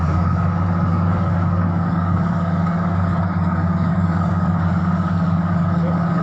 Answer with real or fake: fake